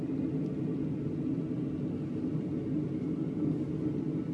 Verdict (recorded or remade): recorded